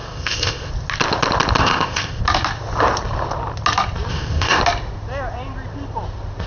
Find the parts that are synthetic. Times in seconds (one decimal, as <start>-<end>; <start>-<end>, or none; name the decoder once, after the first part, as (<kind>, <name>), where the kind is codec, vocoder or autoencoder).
0.0-0.7 (codec, ZipCodec); 1.6-2.2; 4.1-4.6

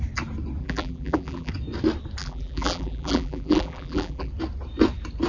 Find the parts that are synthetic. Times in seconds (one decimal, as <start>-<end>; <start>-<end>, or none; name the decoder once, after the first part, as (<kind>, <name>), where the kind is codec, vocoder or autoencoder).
0.6-1.5 (vocoder, BigVGAN v2); 2.2-4.3

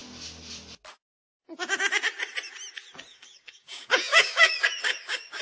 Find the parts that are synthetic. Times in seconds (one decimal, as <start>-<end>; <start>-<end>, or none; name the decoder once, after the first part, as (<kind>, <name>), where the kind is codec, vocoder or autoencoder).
3.1-5.4 (codec, DAC)

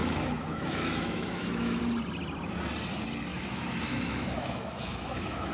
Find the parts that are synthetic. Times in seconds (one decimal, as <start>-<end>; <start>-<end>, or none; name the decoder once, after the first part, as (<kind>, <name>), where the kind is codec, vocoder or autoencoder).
0.0-1.8 (autoencoder, DAC-VAE); 3.3-5.5

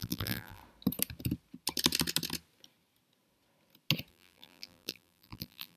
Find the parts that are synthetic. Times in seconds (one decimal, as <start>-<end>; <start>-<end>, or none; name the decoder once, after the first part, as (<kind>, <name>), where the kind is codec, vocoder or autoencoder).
0.0-0.6 (vocoder, BigVGAN v2); 4.1-5.8

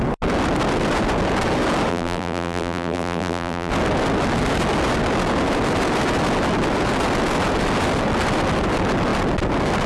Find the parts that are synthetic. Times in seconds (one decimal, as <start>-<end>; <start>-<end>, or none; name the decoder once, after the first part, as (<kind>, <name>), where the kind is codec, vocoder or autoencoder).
1.9-3.7 (vocoder, BigVGAN v2)

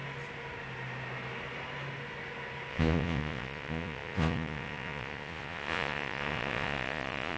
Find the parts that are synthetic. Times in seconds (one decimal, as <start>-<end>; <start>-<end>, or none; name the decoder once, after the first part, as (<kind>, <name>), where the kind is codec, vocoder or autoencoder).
2.7-7.4 (vocoder, Vocos)